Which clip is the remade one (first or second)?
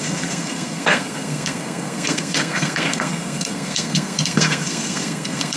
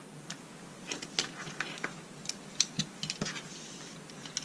first